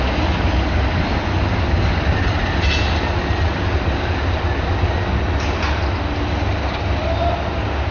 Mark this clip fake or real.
real